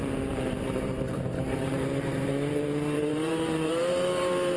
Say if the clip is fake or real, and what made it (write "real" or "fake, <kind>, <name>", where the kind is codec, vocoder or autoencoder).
fake, vocoder, BigVGAN v2